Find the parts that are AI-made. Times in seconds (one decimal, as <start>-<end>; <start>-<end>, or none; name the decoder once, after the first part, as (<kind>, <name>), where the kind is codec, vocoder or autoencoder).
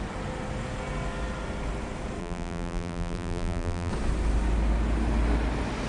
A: 2.2-3.9 (vocoder, BigVGAN v2)